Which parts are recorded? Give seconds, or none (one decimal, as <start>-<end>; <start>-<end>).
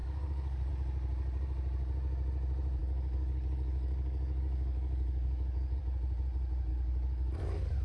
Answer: 0.7-2.8; 5.8-6.7